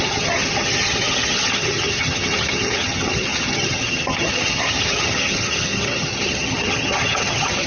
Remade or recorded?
remade